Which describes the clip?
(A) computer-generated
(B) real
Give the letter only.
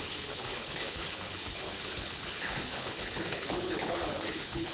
A